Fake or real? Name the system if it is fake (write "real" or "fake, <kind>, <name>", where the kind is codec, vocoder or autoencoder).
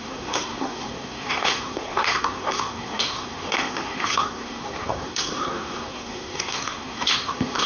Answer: fake, codec, SNAC